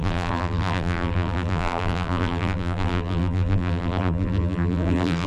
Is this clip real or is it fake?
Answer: fake